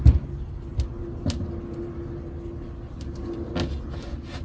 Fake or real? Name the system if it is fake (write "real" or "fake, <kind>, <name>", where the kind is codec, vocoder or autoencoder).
real